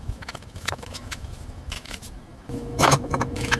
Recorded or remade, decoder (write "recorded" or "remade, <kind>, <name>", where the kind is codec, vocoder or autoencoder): remade, autoencoder, DAC-VAE